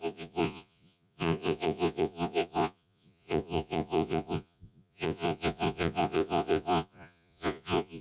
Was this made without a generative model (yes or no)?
no